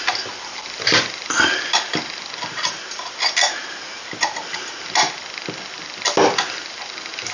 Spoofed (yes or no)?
no